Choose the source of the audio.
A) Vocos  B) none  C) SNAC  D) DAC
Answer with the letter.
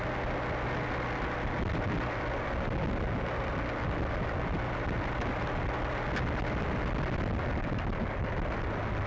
B